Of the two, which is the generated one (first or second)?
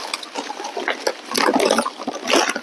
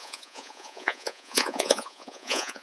second